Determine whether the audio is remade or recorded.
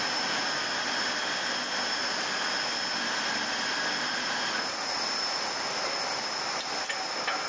recorded